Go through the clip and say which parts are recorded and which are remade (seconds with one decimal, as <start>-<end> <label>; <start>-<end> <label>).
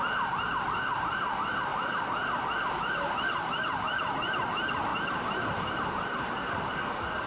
0.0-4.9 recorded; 4.9-6.7 remade; 6.7-7.3 recorded